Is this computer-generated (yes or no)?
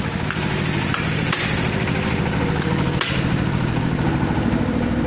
no